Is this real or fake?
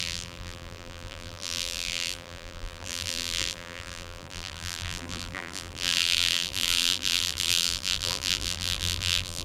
fake